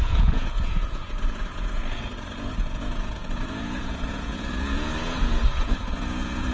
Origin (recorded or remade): remade